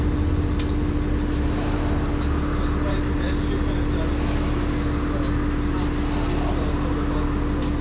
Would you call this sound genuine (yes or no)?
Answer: yes